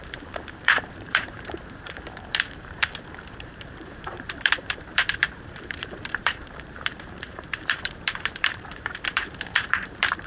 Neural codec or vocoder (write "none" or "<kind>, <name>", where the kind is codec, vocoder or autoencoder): vocoder, BigVGAN v2